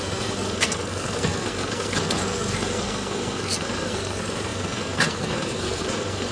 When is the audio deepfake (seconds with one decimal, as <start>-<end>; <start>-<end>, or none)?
0.0-6.3